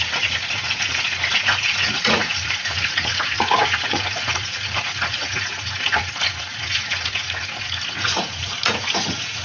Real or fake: fake